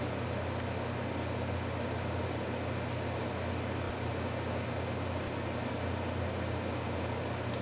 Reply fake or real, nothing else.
real